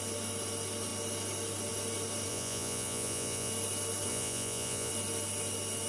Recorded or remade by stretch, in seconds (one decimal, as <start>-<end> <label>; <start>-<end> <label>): 0.0-2.3 recorded; 2.3-3.5 remade; 3.5-4.1 recorded; 4.1-4.9 remade; 4.9-5.9 recorded